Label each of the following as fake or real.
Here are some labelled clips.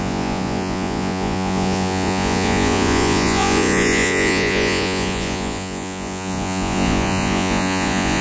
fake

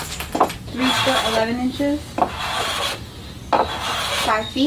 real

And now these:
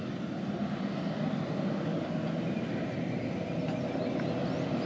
real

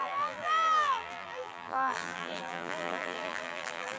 fake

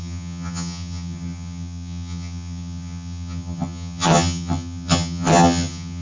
fake